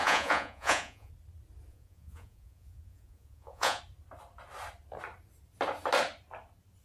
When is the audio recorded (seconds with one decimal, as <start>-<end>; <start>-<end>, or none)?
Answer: 1.1-1.7; 3.8-6.8